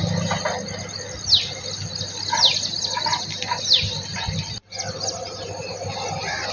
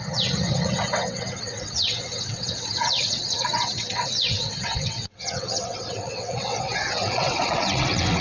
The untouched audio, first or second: first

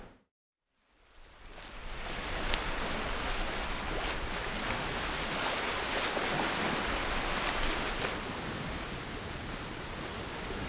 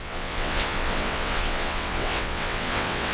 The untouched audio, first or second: first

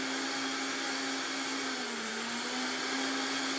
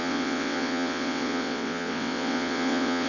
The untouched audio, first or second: first